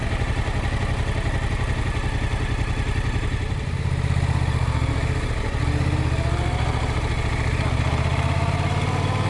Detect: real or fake real